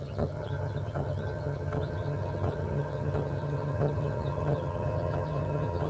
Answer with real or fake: fake